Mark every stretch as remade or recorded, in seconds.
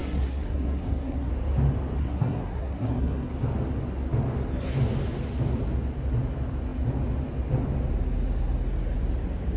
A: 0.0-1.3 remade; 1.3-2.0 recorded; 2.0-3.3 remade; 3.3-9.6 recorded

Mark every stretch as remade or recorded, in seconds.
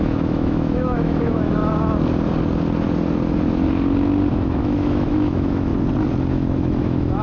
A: 0.0-1.6 remade; 1.6-4.3 recorded; 4.3-5.7 remade; 5.7-6.3 recorded; 6.3-7.2 remade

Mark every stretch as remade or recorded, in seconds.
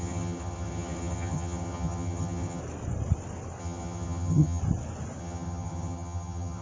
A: 0.0-2.6 remade; 2.6-3.6 recorded; 3.6-4.6 remade; 4.6-5.2 recorded; 5.2-6.6 remade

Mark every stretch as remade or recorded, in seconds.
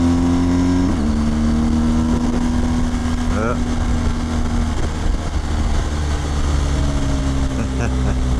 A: 0.0-8.4 recorded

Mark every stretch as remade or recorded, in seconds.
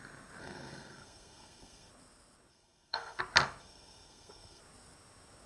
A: 0.0-0.4 recorded; 0.4-1.9 remade; 1.9-2.5 recorded; 2.5-3.2 remade; 3.2-3.6 recorded; 3.6-4.6 remade; 4.6-5.5 recorded